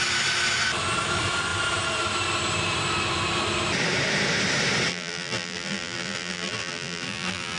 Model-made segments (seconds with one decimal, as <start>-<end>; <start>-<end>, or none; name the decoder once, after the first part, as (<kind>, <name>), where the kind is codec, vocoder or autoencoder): 4.9-7.6 (vocoder, BigVGAN v2)